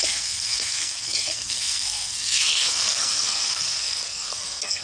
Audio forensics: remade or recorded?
remade